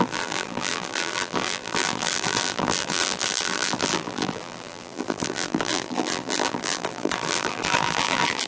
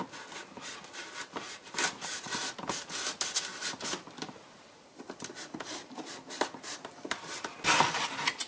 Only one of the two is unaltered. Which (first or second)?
second